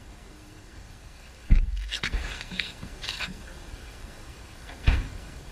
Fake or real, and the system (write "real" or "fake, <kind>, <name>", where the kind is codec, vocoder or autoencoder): fake, codec, SNAC